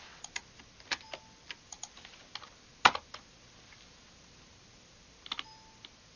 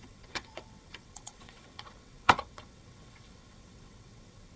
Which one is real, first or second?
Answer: first